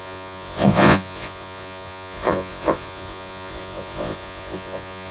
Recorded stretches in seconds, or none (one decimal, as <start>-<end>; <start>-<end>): none